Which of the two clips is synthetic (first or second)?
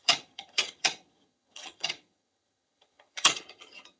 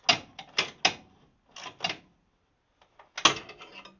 first